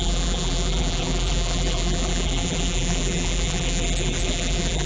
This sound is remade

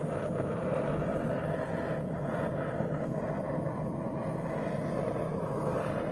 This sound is recorded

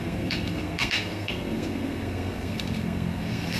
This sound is remade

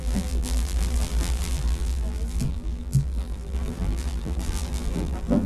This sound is remade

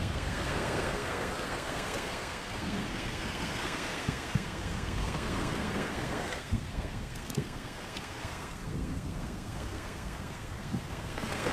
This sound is remade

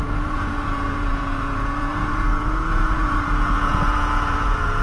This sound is remade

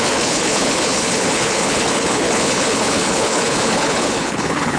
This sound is remade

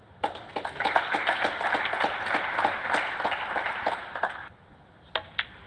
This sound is recorded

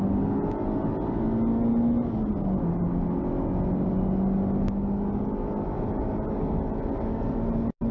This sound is recorded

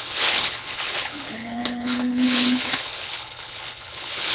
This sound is remade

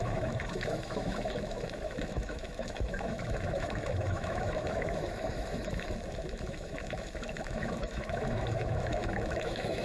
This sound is remade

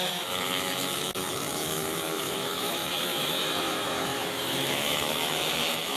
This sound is remade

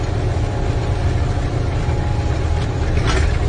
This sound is recorded